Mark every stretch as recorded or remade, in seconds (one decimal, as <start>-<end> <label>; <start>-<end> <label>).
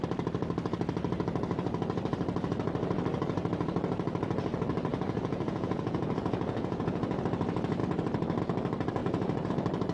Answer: 0.0-4.9 recorded; 4.9-7.2 remade; 7.2-9.0 recorded; 9.0-9.5 remade; 9.5-9.9 recorded